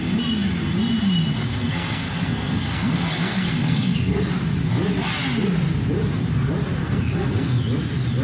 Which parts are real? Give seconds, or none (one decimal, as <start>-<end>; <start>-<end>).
0.0-1.4; 4.3-6.8; 7.6-8.2